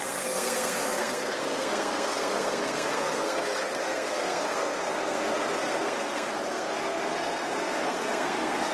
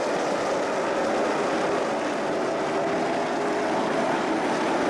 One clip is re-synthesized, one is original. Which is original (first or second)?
second